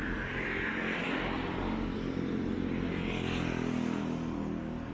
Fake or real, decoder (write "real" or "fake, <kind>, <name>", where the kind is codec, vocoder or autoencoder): real